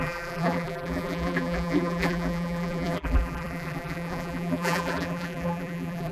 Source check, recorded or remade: remade